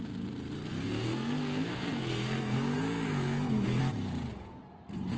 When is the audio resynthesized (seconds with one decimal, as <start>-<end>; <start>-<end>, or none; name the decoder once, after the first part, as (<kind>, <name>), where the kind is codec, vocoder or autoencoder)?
0.7-3.8 (codec, SNAC)